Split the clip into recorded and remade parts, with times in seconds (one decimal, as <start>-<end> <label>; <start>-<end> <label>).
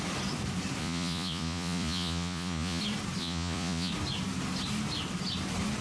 0.0-0.8 recorded; 0.8-2.8 remade; 2.8-3.2 recorded; 3.2-3.9 remade; 3.9-5.8 recorded